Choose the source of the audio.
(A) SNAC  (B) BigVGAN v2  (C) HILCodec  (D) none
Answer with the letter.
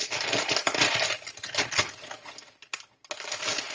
D